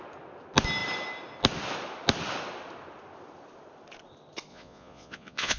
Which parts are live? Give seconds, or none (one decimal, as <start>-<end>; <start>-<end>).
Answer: 0.0-4.5